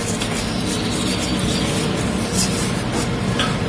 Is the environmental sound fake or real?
real